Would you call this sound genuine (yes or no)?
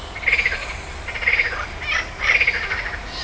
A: yes